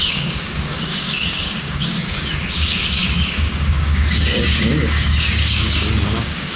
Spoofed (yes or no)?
yes